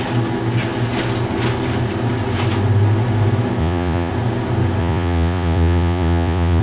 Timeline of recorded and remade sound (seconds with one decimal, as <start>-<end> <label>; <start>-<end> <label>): 0.0-3.6 recorded; 3.6-4.1 remade; 4.1-4.8 recorded; 4.8-6.6 remade